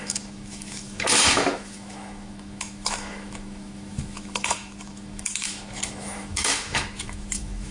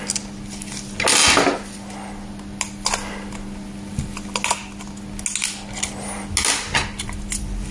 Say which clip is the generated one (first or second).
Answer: first